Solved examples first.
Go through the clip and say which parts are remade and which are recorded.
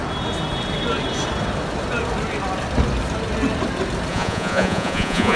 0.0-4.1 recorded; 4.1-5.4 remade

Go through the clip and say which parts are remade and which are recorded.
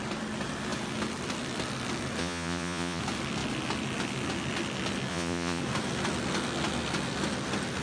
0.0-2.2 recorded; 2.2-3.0 remade; 3.0-5.1 recorded; 5.1-5.6 remade; 5.6-7.8 recorded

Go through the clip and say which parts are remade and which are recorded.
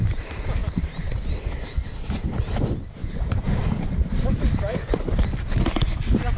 0.0-6.4 recorded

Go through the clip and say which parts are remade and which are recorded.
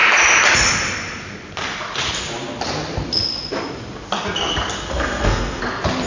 0.0-4.9 recorded; 4.9-5.6 remade; 5.6-6.1 recorded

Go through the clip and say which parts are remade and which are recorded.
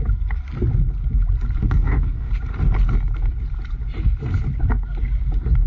0.0-1.6 recorded; 1.6-2.3 remade; 2.3-5.7 recorded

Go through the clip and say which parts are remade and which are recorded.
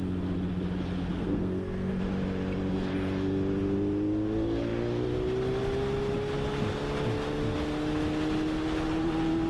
0.0-1.1 recorded; 1.1-1.9 remade; 1.9-9.5 recorded